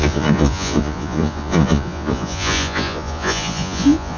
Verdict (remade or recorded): remade